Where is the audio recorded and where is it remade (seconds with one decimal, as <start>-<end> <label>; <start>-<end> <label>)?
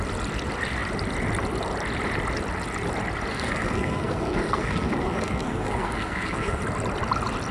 0.0-3.3 recorded; 3.3-6.6 remade; 6.6-7.5 recorded